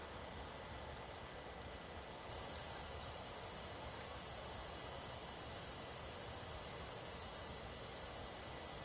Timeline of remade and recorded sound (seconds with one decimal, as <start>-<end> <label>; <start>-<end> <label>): 0.0-8.8 recorded

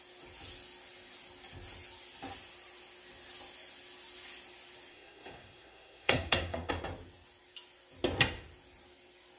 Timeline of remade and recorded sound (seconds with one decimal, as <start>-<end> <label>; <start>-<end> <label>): 0.0-4.9 recorded; 4.9-6.7 remade; 6.7-9.4 recorded

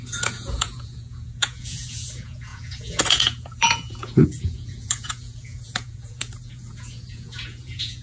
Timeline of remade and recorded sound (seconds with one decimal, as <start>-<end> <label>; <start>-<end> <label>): 0.0-8.0 remade

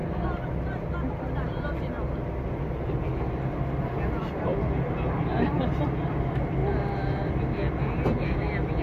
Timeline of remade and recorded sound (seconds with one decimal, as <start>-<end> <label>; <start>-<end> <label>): 0.0-4.0 recorded; 4.0-8.8 remade

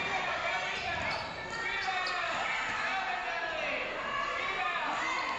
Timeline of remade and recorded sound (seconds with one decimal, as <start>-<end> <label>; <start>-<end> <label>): 0.0-5.4 recorded